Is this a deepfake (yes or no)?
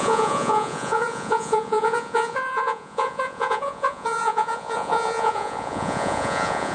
yes